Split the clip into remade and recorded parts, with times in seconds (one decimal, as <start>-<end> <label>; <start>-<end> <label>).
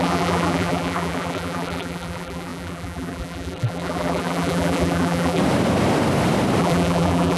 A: 0.0-5.4 remade; 5.4-6.6 recorded; 6.6-7.4 remade